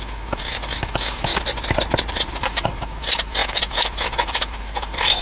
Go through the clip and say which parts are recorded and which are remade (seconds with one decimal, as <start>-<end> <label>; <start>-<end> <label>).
0.0-1.3 remade; 1.3-2.4 recorded; 2.4-5.2 remade